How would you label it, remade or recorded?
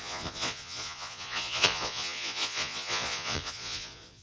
remade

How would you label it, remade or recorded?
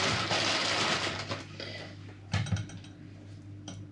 recorded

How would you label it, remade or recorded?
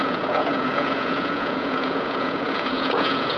remade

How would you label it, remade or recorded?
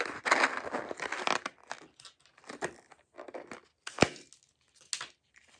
recorded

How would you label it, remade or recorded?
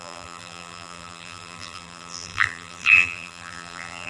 remade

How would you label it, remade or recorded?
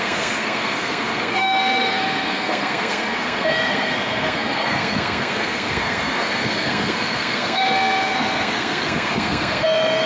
remade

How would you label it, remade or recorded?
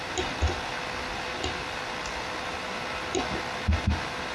recorded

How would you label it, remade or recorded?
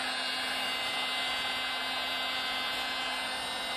recorded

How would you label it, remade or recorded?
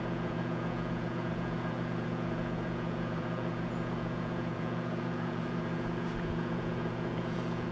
remade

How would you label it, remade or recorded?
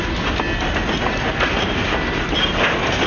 recorded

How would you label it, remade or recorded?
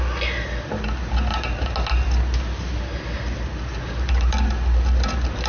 recorded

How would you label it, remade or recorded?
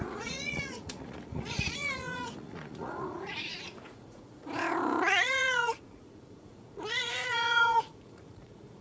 remade